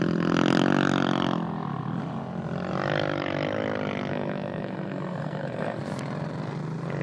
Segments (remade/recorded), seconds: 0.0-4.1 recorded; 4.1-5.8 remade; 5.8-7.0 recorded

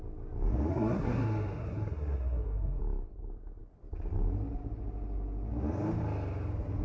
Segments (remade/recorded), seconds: 0.0-0.7 recorded; 0.7-2.8 remade; 2.8-6.8 recorded

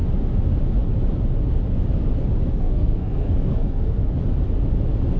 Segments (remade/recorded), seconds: 0.0-2.5 recorded; 2.5-4.0 remade; 4.0-5.2 recorded

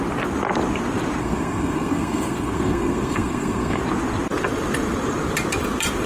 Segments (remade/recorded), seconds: 0.0-1.2 recorded; 1.2-3.8 remade; 3.8-6.1 recorded

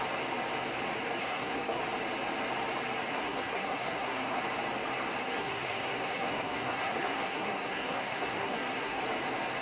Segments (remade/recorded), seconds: 0.0-1.2 recorded; 1.2-1.8 remade; 1.8-3.1 recorded; 3.1-4.4 remade; 4.4-5.2 recorded; 5.2-9.0 remade; 9.0-9.6 recorded

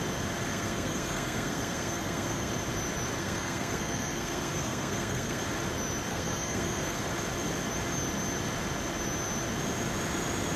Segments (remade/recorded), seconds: 0.0-0.5 recorded; 0.5-2.5 remade; 2.5-3.2 recorded; 3.2-5.4 remade; 5.4-6.1 recorded; 6.1-7.0 remade; 7.0-10.6 recorded

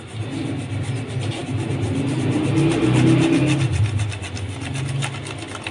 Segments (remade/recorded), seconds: 0.0-5.7 recorded

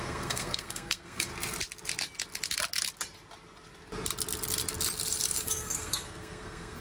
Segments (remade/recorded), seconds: 0.0-1.3 remade; 1.3-5.4 recorded; 5.4-6.8 remade